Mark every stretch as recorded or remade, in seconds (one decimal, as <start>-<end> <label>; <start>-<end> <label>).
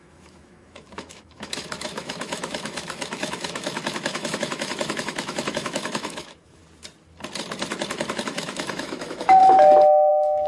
0.0-6.6 remade; 6.6-8.2 recorded; 8.2-9.4 remade; 9.4-10.1 recorded; 10.1-10.5 remade